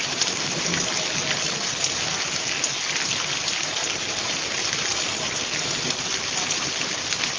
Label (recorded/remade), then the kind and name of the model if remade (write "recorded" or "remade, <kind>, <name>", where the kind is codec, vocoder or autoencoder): recorded